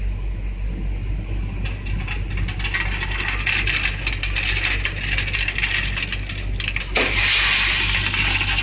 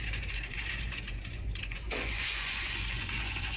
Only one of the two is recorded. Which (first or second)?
first